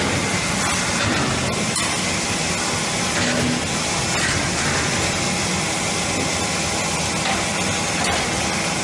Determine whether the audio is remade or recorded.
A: recorded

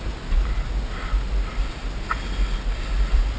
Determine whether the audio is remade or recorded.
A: recorded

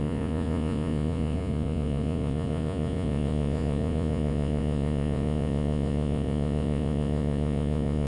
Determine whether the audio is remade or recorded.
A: remade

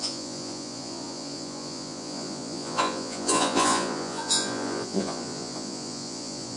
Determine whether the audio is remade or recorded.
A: remade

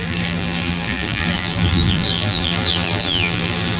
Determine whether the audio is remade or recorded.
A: remade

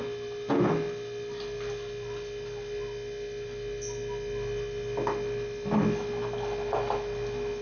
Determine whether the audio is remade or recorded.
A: recorded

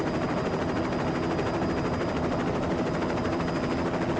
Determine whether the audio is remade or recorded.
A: recorded